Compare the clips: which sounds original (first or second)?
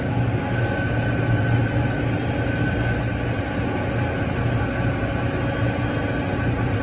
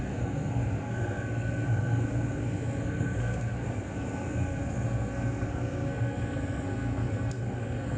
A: first